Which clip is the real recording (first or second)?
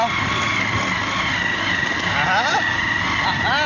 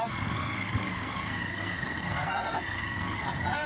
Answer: first